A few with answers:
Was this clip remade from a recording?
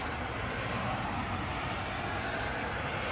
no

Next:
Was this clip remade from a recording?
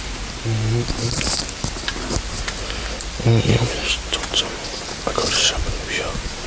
no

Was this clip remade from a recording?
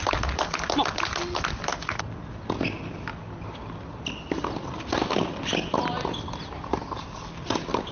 no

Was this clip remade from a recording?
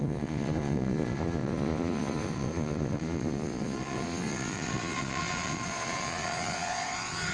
yes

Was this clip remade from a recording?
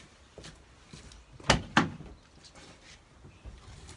no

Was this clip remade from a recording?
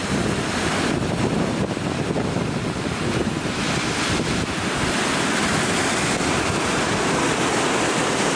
no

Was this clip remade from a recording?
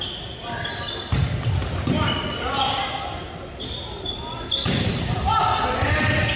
no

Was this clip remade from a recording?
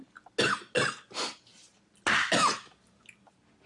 no